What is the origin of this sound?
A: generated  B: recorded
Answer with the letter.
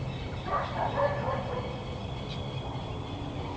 B